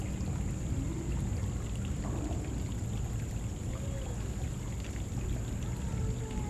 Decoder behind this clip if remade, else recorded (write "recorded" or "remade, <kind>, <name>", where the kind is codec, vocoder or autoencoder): recorded